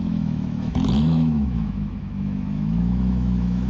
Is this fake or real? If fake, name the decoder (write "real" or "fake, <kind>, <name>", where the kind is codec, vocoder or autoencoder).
fake, autoencoder, DAC-VAE